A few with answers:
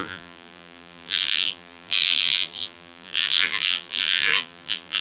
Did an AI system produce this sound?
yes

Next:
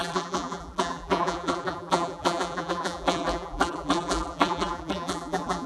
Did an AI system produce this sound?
yes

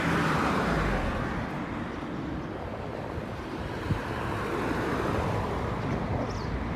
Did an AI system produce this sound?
no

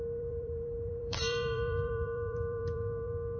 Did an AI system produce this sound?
yes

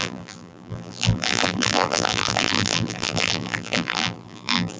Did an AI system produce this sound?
yes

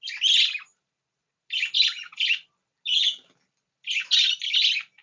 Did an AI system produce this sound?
no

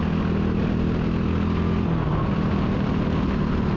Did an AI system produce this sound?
no